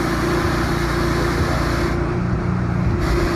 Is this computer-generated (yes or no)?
no